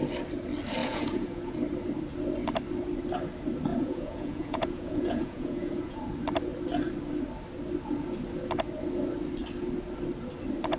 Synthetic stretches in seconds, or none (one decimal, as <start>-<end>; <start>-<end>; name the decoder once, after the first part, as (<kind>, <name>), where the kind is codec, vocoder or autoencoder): 0.8-1.5 (vocoder, Vocos); 3.7-6.0